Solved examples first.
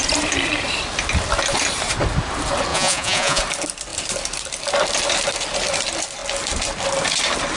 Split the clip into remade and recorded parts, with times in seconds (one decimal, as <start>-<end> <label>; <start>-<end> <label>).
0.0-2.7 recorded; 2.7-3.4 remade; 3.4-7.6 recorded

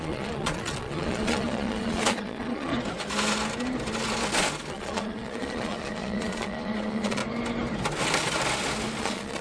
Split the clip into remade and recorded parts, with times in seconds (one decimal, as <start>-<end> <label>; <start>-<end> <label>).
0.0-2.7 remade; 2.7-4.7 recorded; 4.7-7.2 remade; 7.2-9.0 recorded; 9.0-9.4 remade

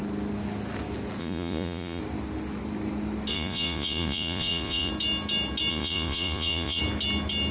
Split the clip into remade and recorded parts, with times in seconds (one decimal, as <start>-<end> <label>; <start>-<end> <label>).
0.0-1.2 recorded; 1.2-2.0 remade; 2.0-3.3 recorded; 3.3-4.9 remade; 4.9-5.7 recorded; 5.7-6.8 remade; 6.8-7.5 recorded

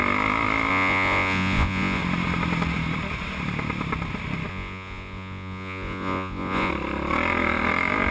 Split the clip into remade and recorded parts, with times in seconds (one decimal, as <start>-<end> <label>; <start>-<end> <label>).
0.0-0.7 recorded; 0.7-2.0 remade; 2.0-4.5 recorded; 4.5-6.7 remade; 6.7-8.1 recorded

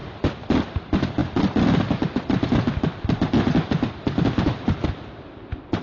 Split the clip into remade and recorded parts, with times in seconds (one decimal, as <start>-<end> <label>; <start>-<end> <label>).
0.0-5.8 recorded

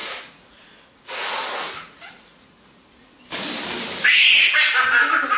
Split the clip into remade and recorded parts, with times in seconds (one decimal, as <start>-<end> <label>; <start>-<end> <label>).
0.0-3.2 remade; 3.2-5.4 recorded

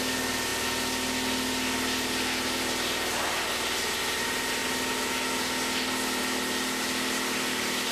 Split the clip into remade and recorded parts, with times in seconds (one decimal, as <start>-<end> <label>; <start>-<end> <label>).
0.0-7.9 recorded

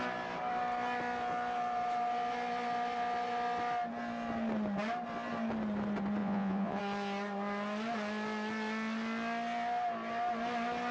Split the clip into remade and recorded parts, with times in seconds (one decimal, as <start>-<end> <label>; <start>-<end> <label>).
0.0-6.2 recorded; 6.2-6.8 remade; 6.8-10.9 recorded